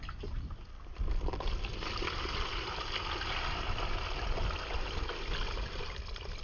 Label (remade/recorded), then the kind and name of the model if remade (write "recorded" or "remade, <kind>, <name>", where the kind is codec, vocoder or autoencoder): recorded